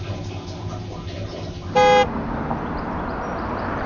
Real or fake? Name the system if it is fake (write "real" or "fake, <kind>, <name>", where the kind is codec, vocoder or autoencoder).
real